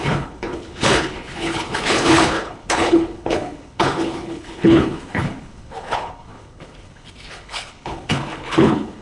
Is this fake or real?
fake